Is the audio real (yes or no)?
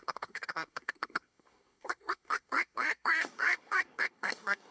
no